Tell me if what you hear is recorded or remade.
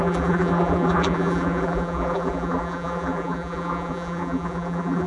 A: remade